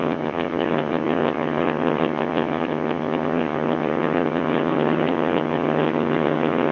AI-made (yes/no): yes